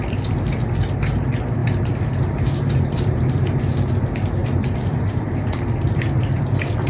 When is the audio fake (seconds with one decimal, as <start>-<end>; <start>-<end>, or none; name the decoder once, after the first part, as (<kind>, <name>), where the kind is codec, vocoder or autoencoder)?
1.6-3.9 (vocoder, BigVGAN v2); 4.4-6.9